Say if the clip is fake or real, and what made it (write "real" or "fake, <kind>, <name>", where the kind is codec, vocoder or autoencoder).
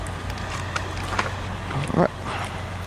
real